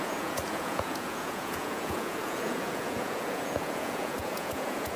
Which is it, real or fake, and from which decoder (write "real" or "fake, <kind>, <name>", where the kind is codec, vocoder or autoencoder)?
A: fake, vocoder, Vocos